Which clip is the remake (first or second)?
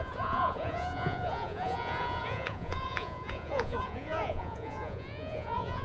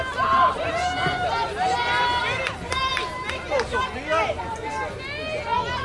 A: first